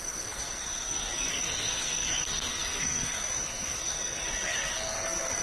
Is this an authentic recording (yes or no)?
no